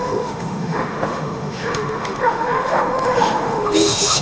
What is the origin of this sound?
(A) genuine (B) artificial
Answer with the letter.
B